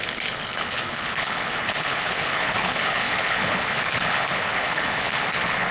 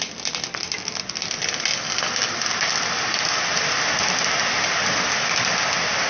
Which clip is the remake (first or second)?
first